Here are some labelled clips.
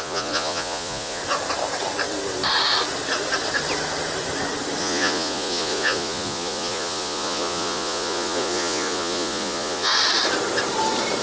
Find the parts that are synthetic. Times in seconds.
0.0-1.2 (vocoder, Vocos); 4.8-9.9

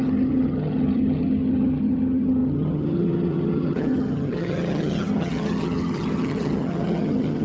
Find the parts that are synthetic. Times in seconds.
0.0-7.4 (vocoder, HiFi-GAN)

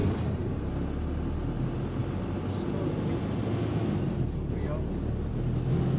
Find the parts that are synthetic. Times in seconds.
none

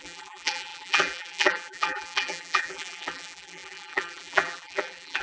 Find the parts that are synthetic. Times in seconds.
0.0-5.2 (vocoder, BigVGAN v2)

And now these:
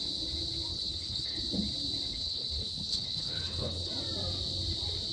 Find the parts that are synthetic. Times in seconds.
0.7-1.4 (codec, HILCodec); 2.1-3.9

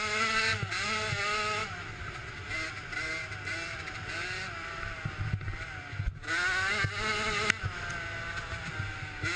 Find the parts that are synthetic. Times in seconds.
1.6-2.2 (vocoder, BigVGAN v2)

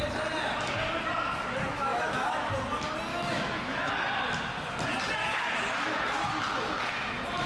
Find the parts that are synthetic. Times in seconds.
1.7-2.5 (autoencoder, DAC-VAE); 3.1-3.9; 5.2-6.0

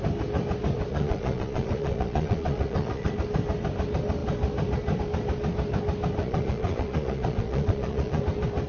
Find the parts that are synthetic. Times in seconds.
0.9-3.1 (vocoder, Vocos); 6.2-8.2